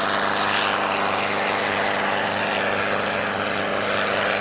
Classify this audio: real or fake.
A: real